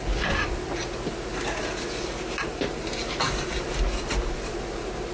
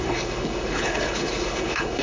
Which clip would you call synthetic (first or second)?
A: second